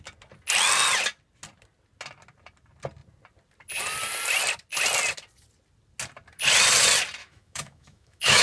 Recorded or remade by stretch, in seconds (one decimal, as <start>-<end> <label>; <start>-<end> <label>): 0.0-7.2 recorded; 7.2-8.4 remade